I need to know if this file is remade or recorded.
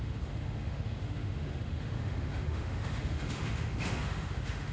remade